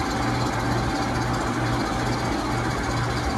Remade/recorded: recorded